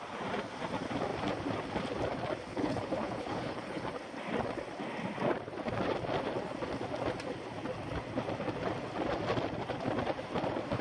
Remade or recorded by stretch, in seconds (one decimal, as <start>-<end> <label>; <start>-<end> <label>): 0.0-2.5 recorded; 2.5-3.8 remade; 3.8-10.8 recorded